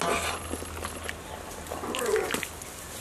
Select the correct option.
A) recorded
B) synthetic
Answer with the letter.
A